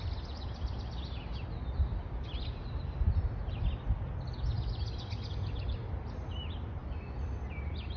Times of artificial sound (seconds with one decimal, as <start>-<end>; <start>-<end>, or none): none